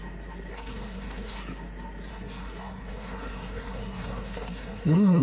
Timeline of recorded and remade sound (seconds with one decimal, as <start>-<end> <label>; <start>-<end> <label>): 0.0-0.5 recorded; 0.5-1.4 remade; 1.4-2.1 recorded; 2.1-5.2 remade